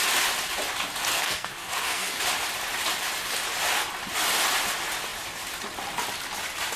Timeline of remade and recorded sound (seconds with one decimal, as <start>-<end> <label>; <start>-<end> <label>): 0.0-1.1 recorded; 1.1-2.2 remade; 2.2-6.8 recorded

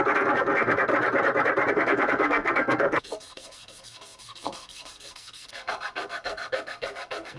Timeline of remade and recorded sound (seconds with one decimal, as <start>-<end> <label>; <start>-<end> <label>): 0.0-0.9 remade; 0.9-1.7 recorded; 1.7-7.4 remade

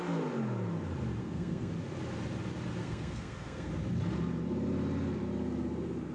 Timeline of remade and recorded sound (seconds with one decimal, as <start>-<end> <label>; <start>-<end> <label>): 0.0-1.2 recorded; 1.2-1.7 remade; 1.7-2.8 recorded; 2.8-3.7 remade; 3.7-6.1 recorded

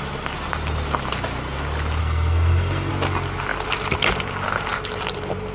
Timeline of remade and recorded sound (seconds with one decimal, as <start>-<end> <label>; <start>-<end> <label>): 0.0-2.0 recorded; 2.0-2.9 remade; 2.9-5.5 recorded